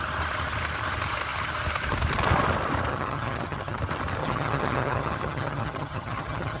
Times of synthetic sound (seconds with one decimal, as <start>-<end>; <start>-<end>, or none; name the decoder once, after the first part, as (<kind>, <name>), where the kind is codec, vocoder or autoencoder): 2.9-3.8 (vocoder, HiFi-GAN); 4.2-6.6